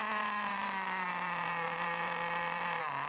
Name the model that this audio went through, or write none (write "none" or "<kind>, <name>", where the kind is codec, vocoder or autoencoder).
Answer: vocoder, BigVGAN v2